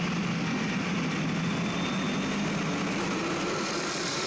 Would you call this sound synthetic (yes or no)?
no